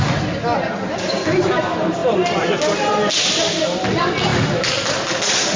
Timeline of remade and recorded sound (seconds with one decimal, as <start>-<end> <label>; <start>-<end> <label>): 0.0-5.6 recorded